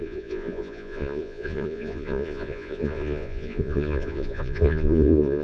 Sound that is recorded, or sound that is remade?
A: remade